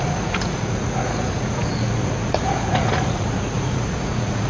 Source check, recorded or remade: remade